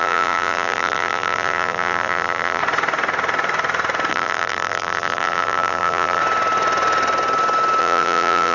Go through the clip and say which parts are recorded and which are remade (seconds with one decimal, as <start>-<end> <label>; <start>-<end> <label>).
0.0-2.6 remade; 2.6-4.1 recorded; 4.1-6.2 remade; 6.2-7.8 recorded; 7.8-8.5 remade